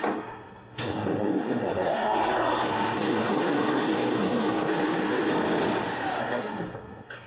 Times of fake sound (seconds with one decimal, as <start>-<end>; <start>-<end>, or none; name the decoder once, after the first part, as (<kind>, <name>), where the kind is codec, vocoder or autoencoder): 0.0-5.3 (codec, SNAC); 6.2-7.3

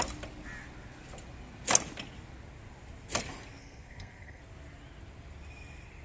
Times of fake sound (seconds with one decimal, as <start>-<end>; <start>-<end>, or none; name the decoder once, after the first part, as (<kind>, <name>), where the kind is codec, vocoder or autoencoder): 3.6-4.4 (codec, SNAC)

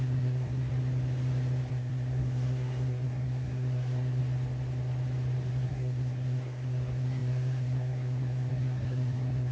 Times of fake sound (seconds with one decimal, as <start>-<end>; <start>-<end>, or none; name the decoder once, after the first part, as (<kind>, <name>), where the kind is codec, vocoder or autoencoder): 0.0-0.7 (codec, SNAC); 1.7-4.2; 5.5-9.5

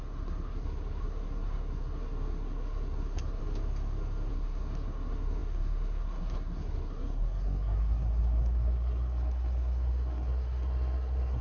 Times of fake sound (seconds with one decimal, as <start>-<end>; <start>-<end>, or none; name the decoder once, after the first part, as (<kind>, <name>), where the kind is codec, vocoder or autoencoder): 0.0-3.4 (codec, SNAC); 4.3-11.4

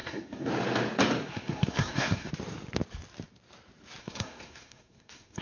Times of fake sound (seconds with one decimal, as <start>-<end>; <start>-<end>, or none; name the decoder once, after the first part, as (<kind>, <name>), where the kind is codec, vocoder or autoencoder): 0.0-0.5 (codec, SNAC); 1.2-2.3; 4.0-5.4

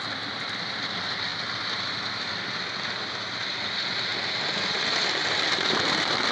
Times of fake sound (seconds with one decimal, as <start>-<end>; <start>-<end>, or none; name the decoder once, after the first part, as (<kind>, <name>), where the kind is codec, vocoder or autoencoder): none